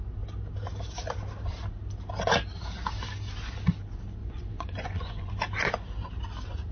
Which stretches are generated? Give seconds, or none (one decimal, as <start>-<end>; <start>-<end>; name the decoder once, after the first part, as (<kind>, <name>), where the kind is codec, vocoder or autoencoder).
4.2-5.3 (vocoder, Vocos)